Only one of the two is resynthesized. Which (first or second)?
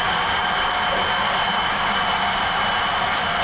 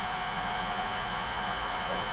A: second